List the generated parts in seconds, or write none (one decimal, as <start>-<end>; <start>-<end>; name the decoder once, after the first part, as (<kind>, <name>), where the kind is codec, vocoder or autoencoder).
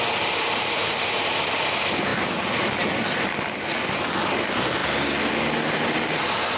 none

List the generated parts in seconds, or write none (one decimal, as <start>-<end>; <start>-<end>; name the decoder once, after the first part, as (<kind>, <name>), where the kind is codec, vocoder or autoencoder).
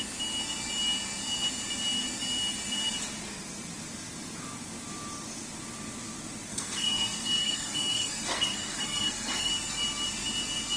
6.5-9.5 (codec, SNAC)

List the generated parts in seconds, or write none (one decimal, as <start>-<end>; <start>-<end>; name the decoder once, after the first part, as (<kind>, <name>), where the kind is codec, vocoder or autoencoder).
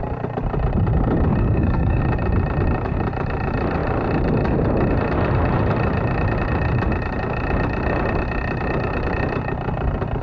1.4-2.0 (codec, SNAC)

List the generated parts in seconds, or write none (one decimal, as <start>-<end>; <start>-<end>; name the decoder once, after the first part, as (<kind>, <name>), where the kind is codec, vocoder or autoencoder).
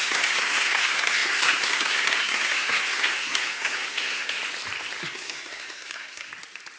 0.0-4.4 (codec, SNAC); 5.0-6.3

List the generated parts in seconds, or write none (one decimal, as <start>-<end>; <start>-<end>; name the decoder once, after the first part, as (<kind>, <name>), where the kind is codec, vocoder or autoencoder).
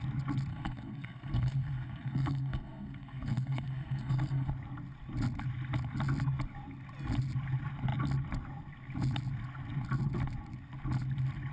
0.5-4.5 (codec, SNAC)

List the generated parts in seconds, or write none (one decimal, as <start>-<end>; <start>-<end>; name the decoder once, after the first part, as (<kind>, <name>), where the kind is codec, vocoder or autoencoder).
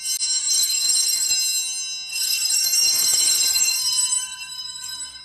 0.4-1.3 (codec, SNAC); 2.1-5.2